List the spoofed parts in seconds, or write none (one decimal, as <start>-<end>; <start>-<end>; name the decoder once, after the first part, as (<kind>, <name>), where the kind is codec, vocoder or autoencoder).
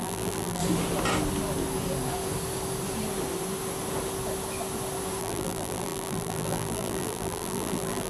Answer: 0.0-0.6 (vocoder, BigVGAN v2); 5.2-8.1